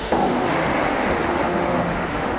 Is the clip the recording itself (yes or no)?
no